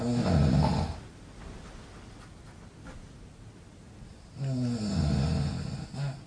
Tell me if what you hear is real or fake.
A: real